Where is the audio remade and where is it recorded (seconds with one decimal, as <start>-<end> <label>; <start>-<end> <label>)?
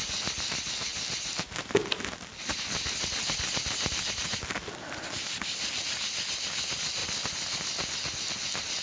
0.0-8.8 recorded